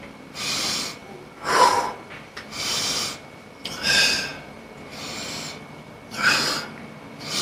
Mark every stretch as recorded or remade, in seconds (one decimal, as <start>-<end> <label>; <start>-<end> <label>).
0.0-1.0 remade; 1.0-2.1 recorded; 2.1-7.4 remade